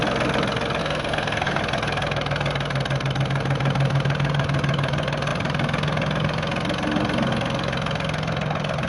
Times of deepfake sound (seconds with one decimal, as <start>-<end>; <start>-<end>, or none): 0.8-1.6